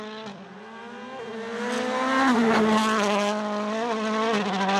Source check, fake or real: real